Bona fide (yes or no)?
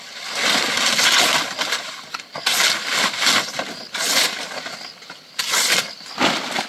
yes